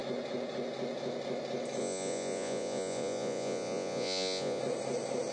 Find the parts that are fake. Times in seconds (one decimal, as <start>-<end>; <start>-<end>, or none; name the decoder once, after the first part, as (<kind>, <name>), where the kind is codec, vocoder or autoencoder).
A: 1.8-4.6 (vocoder, Vocos)